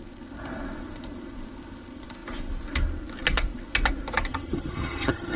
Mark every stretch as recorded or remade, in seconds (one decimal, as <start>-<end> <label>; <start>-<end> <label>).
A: 0.0-4.3 recorded; 4.3-5.4 remade